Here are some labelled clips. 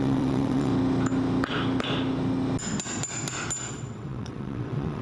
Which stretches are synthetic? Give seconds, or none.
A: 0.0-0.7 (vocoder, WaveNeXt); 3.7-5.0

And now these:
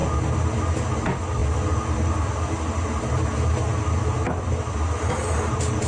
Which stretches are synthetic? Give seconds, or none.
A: none

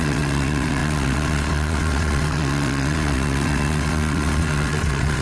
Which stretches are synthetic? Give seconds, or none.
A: 0.0-5.2 (vocoder, WaveNeXt)

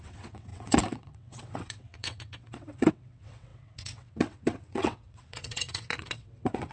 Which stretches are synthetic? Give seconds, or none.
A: 0.0-6.7 (vocoder, WaveNeXt)

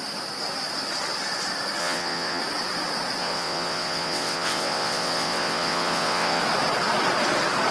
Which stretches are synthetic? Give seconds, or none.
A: 1.8-2.4 (vocoder, WaveNeXt); 3.2-6.4

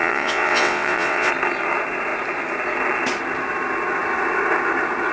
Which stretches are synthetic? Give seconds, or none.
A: 0.0-1.3 (vocoder, WaveNeXt)

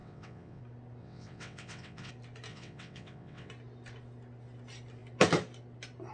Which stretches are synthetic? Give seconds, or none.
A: 0.0-0.6 (vocoder, WaveNeXt); 1.0-2.1; 2.5-3.5

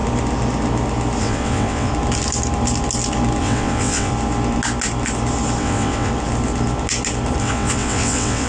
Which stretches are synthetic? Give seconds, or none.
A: 1.2-1.9 (vocoder, WaveNeXt); 3.4-4.1; 5.6-6.1; 7.4-8.5